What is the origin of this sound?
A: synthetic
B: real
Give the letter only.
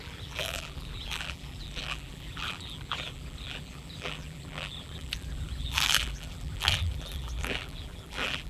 A